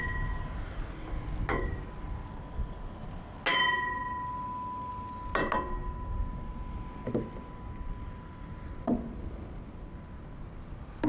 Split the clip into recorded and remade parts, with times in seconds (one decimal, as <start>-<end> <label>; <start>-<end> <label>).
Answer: 0.0-11.1 recorded